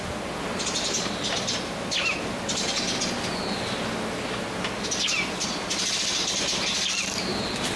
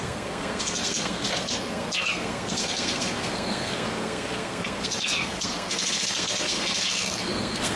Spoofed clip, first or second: second